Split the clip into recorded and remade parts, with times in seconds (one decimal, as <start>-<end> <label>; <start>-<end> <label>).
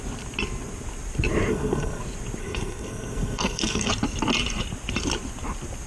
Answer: 0.0-1.5 recorded; 1.5-2.0 remade; 2.0-2.4 recorded; 2.4-3.9 remade; 3.9-5.9 recorded